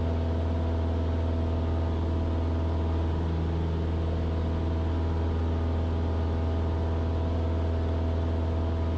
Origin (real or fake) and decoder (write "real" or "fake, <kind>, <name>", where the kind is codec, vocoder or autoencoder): real